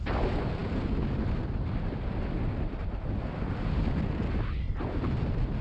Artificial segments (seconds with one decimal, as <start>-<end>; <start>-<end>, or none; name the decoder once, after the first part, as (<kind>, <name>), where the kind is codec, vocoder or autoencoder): none